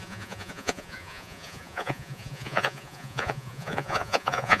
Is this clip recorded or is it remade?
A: remade